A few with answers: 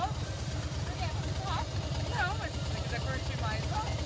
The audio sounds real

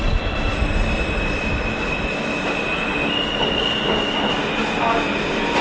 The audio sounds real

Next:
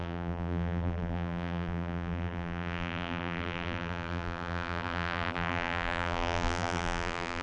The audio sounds fake